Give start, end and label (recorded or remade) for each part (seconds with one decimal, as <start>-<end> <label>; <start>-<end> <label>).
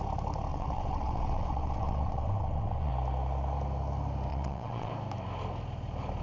0.0-0.5 recorded; 0.5-2.9 remade; 2.9-4.3 recorded; 4.3-4.9 remade; 4.9-6.2 recorded